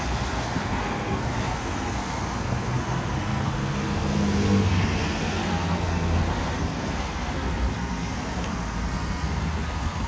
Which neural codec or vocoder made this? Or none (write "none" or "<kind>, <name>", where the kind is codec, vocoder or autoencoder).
codec, SNAC